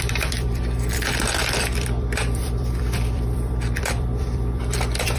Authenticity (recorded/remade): remade